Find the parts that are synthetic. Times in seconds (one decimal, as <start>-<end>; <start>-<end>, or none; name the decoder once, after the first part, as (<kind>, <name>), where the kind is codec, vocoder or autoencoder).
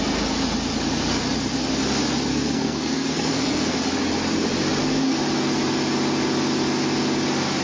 2.3-3.8 (codec, SNAC)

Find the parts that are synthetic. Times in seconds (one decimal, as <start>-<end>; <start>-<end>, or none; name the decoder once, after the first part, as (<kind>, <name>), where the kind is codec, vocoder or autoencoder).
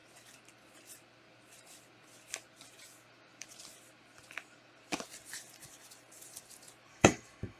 6.9-7.6 (autoencoder, DAC-VAE)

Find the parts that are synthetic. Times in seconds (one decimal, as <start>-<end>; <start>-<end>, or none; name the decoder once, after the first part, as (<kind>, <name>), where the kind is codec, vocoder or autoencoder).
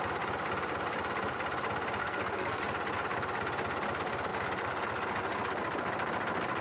2.0-2.6 (codec, SNAC)